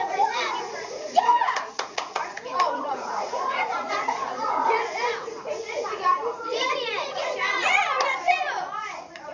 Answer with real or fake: fake